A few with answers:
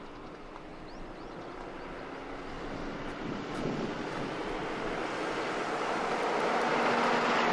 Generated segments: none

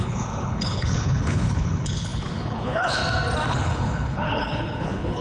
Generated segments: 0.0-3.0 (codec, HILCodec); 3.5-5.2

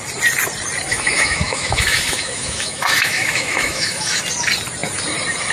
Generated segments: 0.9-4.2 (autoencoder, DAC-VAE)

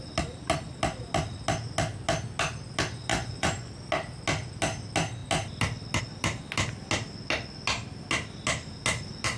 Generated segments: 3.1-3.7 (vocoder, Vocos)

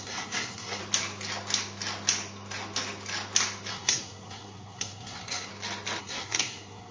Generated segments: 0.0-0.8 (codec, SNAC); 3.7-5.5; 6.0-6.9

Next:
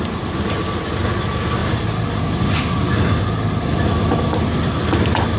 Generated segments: none

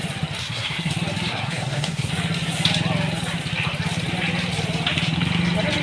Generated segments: 0.4-0.9 (codec, SNAC); 1.3-2.1